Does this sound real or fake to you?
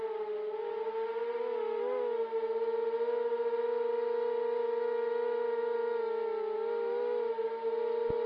real